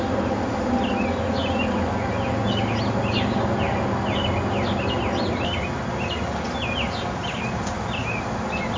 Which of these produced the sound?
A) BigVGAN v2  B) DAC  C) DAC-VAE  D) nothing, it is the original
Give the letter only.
D